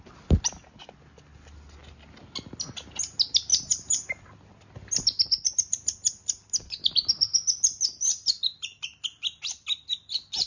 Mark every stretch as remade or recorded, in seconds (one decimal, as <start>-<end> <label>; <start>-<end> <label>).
0.0-10.5 recorded